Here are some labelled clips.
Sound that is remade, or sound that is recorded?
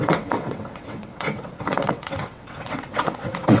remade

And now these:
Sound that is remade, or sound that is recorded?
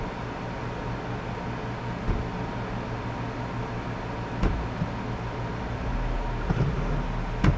recorded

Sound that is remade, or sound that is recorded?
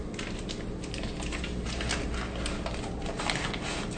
recorded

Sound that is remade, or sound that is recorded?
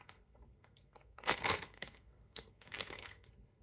remade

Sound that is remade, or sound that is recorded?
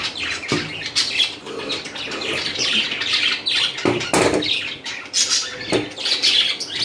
recorded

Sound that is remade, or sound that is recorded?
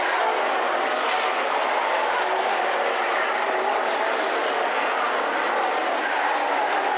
recorded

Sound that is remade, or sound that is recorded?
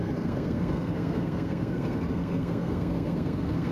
remade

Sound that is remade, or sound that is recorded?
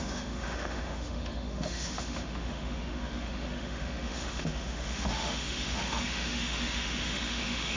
remade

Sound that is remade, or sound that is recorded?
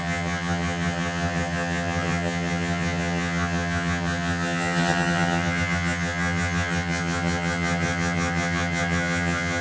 remade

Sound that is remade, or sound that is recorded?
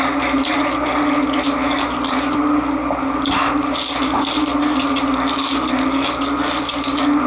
recorded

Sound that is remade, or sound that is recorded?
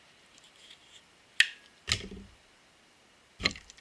recorded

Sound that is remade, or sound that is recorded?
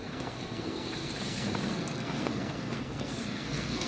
remade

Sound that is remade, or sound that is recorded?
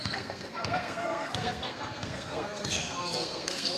remade